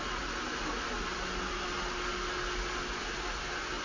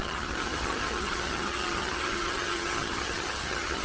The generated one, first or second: second